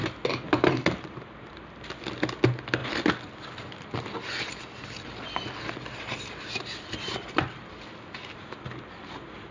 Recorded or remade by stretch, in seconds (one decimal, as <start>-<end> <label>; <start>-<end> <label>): 0.0-9.5 recorded